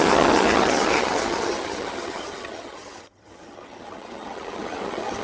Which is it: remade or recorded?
remade